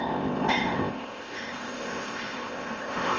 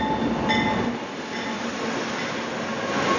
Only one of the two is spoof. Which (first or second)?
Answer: first